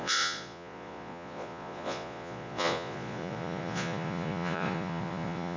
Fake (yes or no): yes